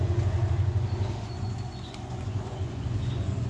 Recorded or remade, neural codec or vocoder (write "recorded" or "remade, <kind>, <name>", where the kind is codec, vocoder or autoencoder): remade, vocoder, Vocos